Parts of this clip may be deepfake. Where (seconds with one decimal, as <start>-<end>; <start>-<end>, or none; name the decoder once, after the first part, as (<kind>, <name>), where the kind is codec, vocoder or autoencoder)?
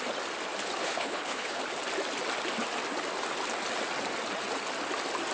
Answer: 0.8-1.6 (codec, HILCodec)